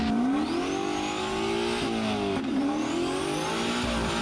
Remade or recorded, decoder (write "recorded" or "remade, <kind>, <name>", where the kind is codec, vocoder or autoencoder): recorded